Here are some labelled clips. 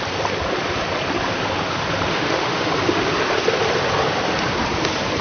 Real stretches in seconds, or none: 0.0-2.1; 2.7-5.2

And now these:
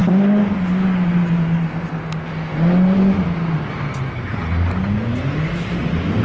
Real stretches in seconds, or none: 0.0-6.2